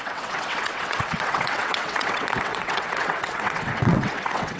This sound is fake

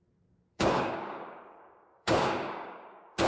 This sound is fake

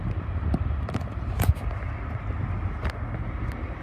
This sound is real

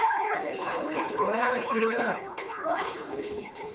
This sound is fake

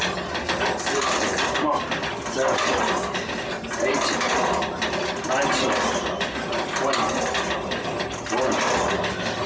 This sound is real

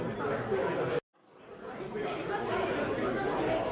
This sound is real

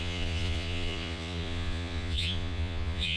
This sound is fake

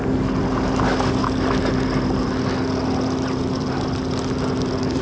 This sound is real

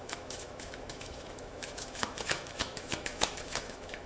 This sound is fake